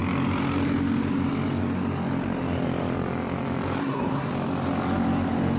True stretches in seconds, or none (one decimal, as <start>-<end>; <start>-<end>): 0.0-3.8; 4.3-5.6

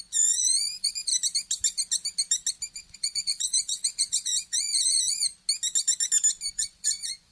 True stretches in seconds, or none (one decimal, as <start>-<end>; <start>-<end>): 1.1-2.7; 5.3-6.5

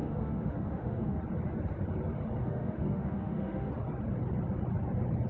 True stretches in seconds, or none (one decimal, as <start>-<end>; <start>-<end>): 1.2-2.4; 3.7-5.3

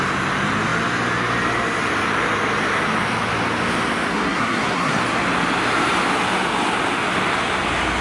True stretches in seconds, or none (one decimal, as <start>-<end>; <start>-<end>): 0.0-4.1; 5.0-8.0

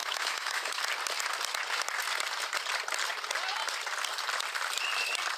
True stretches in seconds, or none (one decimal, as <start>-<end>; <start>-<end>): 0.8-5.4